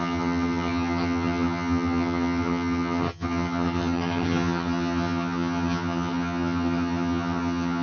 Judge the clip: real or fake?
fake